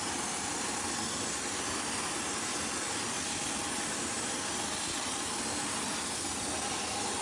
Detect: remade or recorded recorded